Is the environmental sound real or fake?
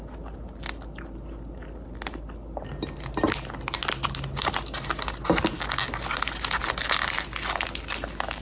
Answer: real